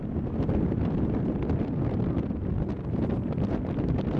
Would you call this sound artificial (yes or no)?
no